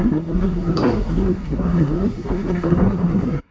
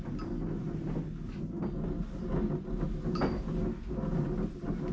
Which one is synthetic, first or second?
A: first